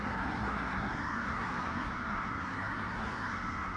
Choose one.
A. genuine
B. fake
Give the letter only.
B